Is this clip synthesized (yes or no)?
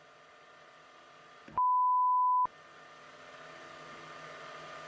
no